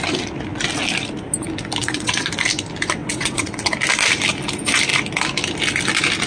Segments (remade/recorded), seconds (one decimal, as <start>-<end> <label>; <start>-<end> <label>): 0.0-1.8 recorded; 1.8-2.3 remade; 2.3-3.0 recorded; 3.0-3.7 remade; 3.7-6.3 recorded